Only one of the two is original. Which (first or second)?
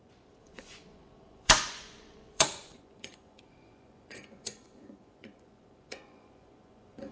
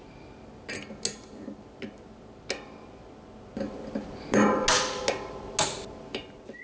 second